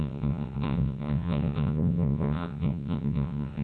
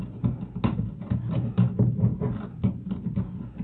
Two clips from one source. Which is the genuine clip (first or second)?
second